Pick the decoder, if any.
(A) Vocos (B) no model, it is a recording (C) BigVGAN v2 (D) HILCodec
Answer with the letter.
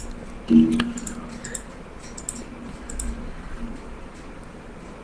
B